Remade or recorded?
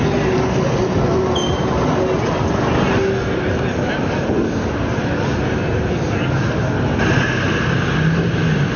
recorded